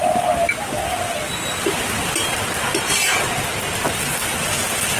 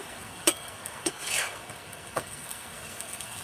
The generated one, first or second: second